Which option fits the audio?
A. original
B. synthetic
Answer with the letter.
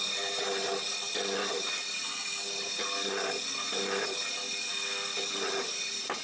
A